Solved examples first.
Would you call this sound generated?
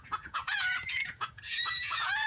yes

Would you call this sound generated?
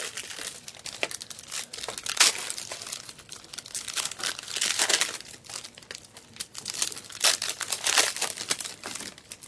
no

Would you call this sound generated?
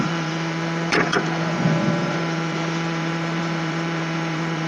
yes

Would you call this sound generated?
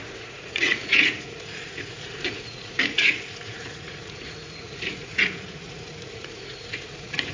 yes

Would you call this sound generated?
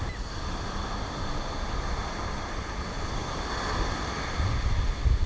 no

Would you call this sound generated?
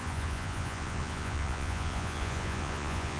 yes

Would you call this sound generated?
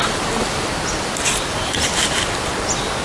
no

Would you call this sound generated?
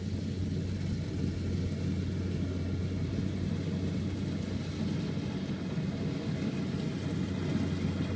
no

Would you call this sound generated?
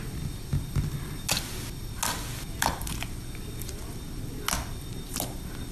no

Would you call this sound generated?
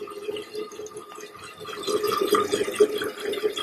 no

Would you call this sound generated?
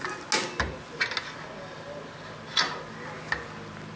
no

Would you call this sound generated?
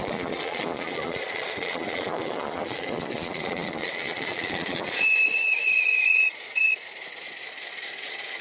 yes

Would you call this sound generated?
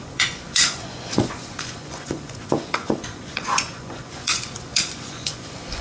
yes